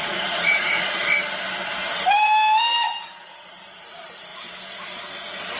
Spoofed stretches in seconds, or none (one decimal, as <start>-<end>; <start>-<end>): 0.0-1.0; 3.2-4.3